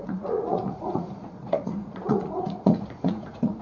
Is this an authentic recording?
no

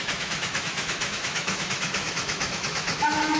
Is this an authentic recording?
no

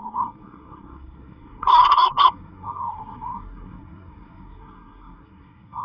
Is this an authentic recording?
no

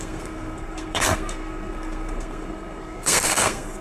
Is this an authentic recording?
no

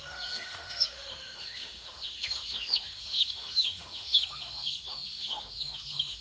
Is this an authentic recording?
no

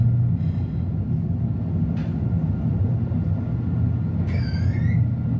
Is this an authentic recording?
yes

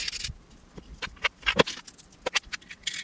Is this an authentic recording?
yes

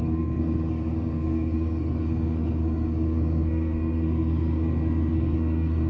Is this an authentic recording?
no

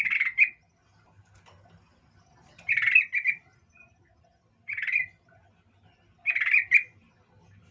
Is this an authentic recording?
yes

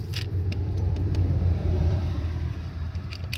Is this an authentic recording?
no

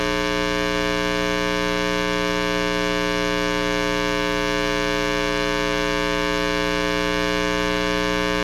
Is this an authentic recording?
yes